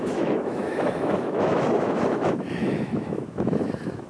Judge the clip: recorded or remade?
remade